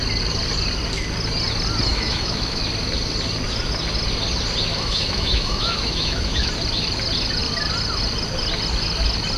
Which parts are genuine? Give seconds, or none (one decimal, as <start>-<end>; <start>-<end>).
0.0-1.9; 2.6-4.7; 6.5-9.4